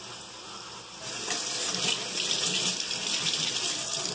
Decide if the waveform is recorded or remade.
recorded